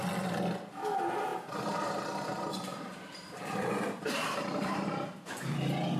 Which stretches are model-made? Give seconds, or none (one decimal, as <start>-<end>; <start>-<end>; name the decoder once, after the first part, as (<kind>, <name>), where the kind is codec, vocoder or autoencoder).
2.7-5.3 (vocoder, BigVGAN v2)